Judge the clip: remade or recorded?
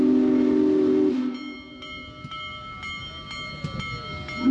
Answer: recorded